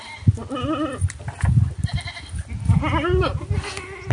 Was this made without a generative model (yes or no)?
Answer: yes